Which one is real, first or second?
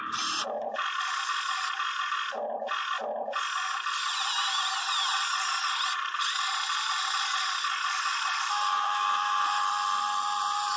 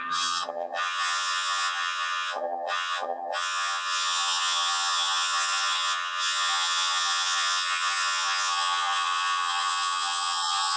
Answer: first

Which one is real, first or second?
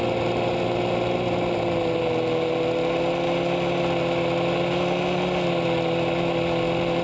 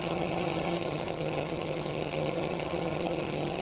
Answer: first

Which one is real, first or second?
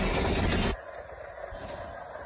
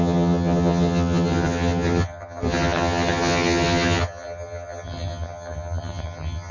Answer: first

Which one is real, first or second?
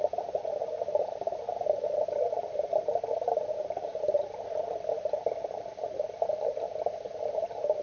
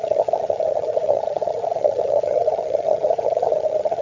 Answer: first